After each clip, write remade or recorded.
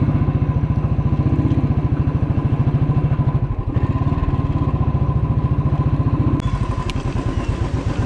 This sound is recorded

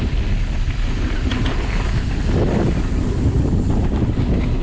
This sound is recorded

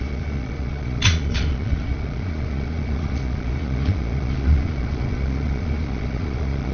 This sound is remade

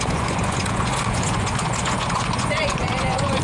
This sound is remade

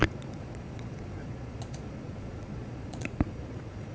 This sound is remade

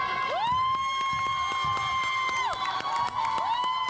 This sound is recorded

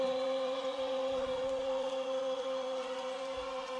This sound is remade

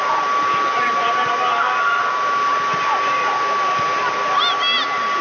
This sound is recorded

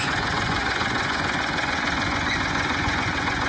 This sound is remade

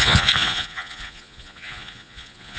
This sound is remade